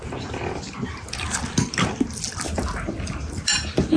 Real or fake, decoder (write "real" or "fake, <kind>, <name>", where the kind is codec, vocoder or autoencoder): real